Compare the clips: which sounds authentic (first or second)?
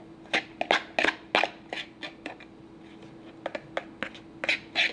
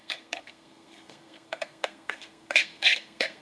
first